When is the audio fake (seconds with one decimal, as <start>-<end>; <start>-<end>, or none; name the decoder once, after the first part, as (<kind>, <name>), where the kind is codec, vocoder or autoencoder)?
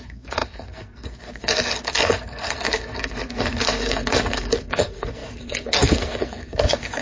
0.0-7.0 (codec, SNAC)